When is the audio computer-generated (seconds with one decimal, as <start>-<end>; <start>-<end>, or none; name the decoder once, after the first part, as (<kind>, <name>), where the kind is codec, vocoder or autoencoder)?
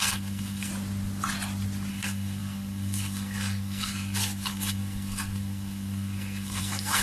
0.0-0.7 (codec, SNAC); 1.9-7.0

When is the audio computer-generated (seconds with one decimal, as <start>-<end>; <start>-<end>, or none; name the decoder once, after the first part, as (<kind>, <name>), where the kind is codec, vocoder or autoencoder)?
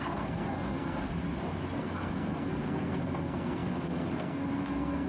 0.0-1.2 (codec, SNAC); 1.8-5.1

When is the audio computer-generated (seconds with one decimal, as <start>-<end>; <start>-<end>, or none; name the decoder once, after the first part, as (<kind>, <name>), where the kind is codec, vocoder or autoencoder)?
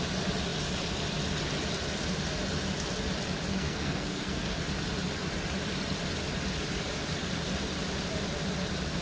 3.5-4.6 (codec, SNAC)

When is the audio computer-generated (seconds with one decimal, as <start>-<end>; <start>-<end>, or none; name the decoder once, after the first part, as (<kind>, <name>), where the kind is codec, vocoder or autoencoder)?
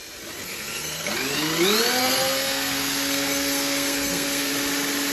0.4-1.1 (codec, SNAC); 2.0-4.5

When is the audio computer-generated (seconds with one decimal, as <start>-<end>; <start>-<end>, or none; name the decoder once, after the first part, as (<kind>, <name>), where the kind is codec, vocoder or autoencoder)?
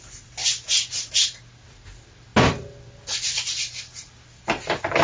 none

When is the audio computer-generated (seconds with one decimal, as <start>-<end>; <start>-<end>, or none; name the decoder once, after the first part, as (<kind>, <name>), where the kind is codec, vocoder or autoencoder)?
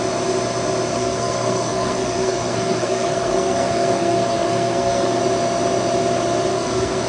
0.9-5.2 (codec, SNAC); 6.5-7.1